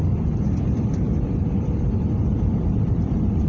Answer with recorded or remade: remade